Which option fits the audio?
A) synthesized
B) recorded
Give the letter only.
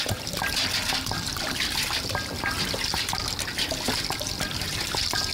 B